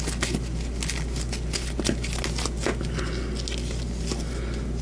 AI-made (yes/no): no